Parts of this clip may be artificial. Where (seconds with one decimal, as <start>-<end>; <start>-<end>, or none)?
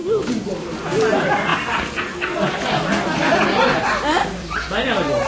1.5-3.8; 4.4-5.3